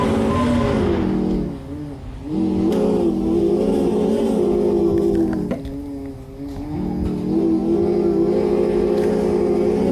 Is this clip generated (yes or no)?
no